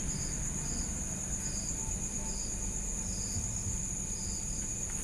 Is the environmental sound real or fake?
real